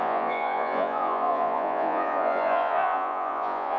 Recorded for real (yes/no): no